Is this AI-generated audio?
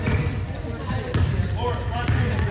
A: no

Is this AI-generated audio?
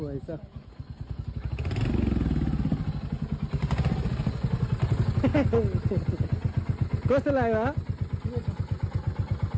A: no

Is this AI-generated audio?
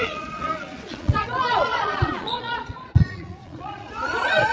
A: yes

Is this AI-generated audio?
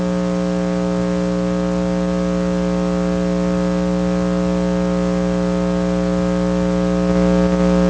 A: no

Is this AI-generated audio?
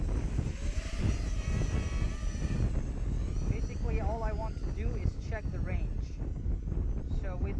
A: no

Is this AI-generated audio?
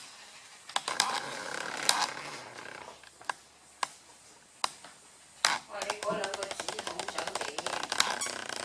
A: no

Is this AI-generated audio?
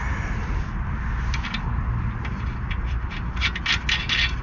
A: no